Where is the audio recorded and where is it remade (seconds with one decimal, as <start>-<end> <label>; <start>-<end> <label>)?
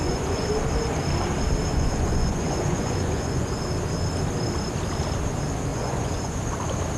0.0-0.5 remade; 0.5-1.7 recorded; 1.7-3.6 remade; 3.6-5.7 recorded; 5.7-6.4 remade; 6.4-7.0 recorded